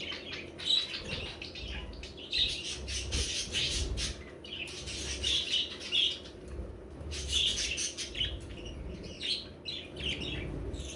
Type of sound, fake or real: real